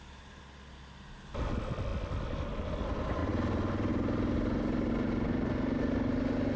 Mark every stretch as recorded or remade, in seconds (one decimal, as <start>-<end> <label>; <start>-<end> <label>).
0.0-6.6 recorded